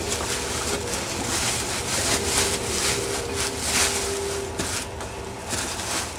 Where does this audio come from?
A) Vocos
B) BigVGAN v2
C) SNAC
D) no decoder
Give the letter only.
D